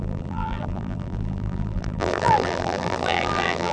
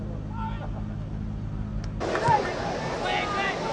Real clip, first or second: second